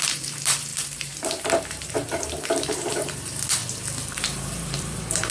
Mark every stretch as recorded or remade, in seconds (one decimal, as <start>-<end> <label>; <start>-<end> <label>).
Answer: 0.0-3.6 remade; 3.6-4.2 recorded; 4.2-5.3 remade